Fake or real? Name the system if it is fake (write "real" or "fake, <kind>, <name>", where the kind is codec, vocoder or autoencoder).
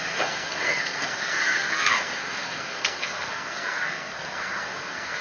fake, codec, SNAC